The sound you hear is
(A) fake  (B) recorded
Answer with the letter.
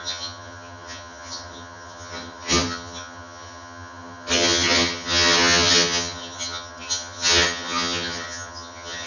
A